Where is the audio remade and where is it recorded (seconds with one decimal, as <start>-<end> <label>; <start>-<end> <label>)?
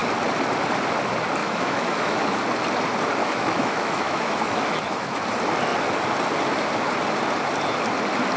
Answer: 0.0-1.4 recorded; 1.4-2.4 remade; 2.4-3.2 recorded; 3.2-5.2 remade; 5.2-8.4 recorded